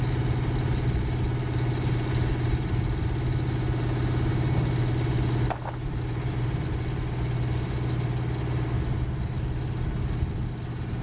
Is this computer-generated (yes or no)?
no